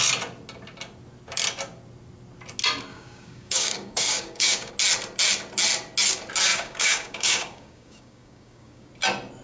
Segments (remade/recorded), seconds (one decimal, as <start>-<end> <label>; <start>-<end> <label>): 0.0-2.9 recorded; 2.9-4.7 remade; 4.7-6.5 recorded; 6.5-8.9 remade; 8.9-9.4 recorded